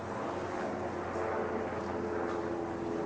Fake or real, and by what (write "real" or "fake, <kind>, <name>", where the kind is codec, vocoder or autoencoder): real